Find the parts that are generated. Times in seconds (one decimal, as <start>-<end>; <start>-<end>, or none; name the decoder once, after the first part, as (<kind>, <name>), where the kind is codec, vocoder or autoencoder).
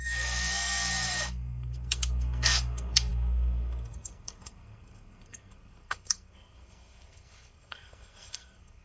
0.0-8.8 (codec, SNAC)